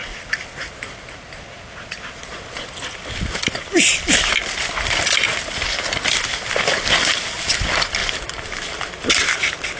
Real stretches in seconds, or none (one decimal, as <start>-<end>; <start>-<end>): 0.0-9.8